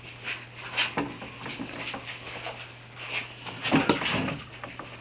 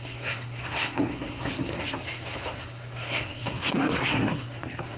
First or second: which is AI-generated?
second